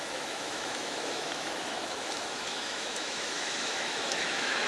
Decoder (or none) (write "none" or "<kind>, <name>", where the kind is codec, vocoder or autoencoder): autoencoder, DAC-VAE